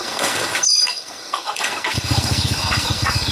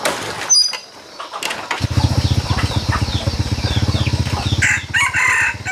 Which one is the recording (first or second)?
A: second